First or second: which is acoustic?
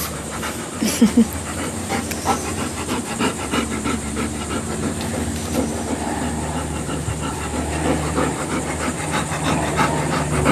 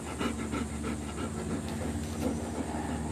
second